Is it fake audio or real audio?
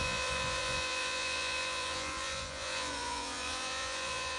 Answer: fake